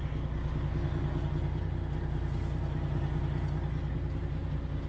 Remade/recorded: recorded